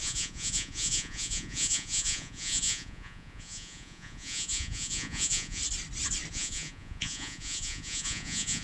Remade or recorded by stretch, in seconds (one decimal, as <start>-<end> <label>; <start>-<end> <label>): 0.0-5.6 remade; 5.6-6.3 recorded; 6.3-8.6 remade